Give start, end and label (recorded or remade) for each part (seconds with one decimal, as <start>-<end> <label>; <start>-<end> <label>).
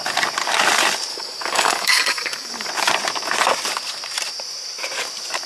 0.0-1.1 recorded; 1.1-2.7 remade; 2.7-5.5 recorded